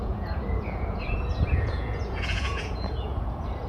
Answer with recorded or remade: remade